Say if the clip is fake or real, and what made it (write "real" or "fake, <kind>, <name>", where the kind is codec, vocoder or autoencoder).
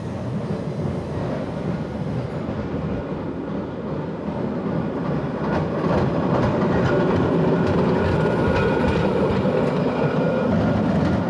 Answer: real